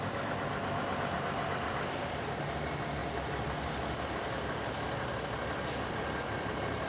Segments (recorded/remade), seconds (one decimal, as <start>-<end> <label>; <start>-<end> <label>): 0.0-6.9 recorded

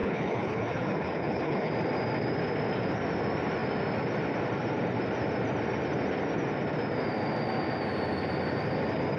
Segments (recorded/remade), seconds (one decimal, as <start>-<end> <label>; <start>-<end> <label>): 0.0-1.7 remade; 1.7-9.2 recorded

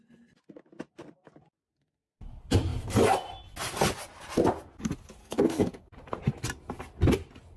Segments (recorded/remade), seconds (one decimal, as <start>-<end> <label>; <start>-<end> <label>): 0.0-5.2 recorded; 5.2-5.9 remade; 5.9-7.6 recorded